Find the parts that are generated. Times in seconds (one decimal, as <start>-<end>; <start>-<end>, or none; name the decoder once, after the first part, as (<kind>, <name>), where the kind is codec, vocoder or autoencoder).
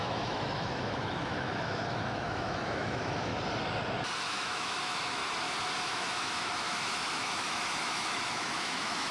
0.0-3.3 (autoencoder, DAC-VAE); 4.2-5.2; 5.8-9.1